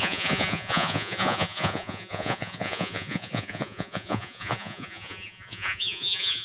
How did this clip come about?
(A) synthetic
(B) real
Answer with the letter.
A